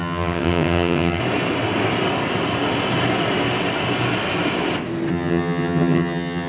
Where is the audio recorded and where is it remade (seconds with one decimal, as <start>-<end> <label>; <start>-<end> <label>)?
0.0-1.2 remade; 1.2-5.1 recorded; 5.1-6.5 remade

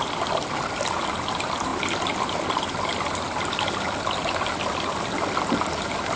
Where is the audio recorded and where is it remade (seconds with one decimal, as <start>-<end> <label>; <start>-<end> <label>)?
0.0-6.2 recorded

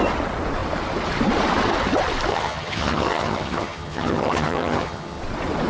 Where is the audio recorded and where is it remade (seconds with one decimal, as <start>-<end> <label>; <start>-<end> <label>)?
0.0-2.3 recorded; 2.3-5.2 remade; 5.2-5.7 recorded